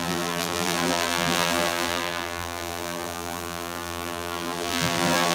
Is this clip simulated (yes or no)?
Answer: yes